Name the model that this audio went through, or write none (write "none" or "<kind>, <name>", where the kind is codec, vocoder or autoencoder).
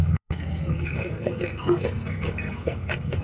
codec, SNAC